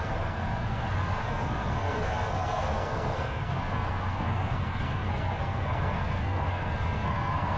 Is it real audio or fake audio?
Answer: fake